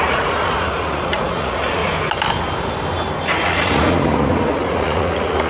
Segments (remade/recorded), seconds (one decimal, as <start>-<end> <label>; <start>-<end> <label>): 0.0-1.8 remade; 1.8-3.4 recorded; 3.4-5.5 remade